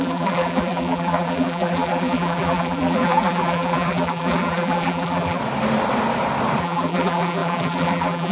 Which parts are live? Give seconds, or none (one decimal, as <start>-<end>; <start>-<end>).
5.4-6.6